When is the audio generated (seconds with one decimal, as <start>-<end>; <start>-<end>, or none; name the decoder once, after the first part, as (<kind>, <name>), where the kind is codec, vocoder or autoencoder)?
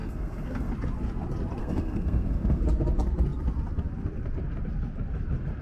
0.0-0.7 (codec, SNAC); 1.6-2.6